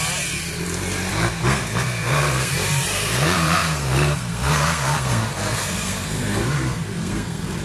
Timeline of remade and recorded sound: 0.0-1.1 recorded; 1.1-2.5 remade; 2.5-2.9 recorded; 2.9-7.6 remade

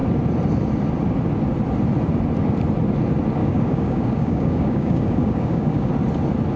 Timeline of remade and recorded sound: 0.0-3.4 recorded; 3.4-5.9 remade; 5.9-6.6 recorded

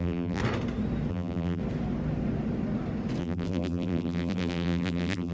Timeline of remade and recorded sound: 0.0-0.4 remade; 0.4-1.1 recorded; 1.1-1.6 remade; 1.6-3.2 recorded; 3.2-5.3 remade

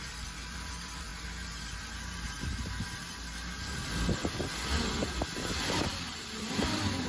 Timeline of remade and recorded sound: 0.0-1.1 remade; 1.1-5.4 recorded; 5.4-7.1 remade

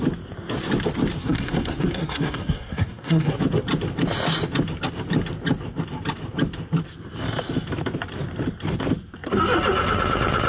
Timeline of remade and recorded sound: 0.0-1.2 recorded; 1.2-3.4 remade; 3.4-10.5 recorded

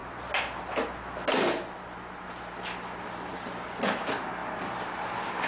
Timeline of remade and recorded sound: 0.0-5.5 recorded

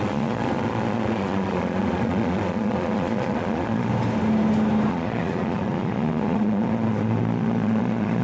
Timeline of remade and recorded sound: 0.0-3.9 remade; 3.9-4.9 recorded; 4.9-8.2 remade